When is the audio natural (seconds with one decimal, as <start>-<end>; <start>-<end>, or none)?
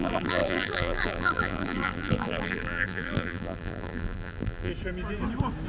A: 4.7-5.7